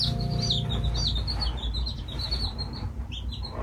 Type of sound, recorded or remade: recorded